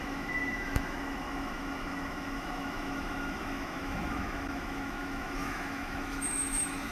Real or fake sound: fake